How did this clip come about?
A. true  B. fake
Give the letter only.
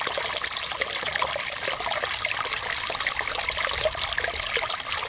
A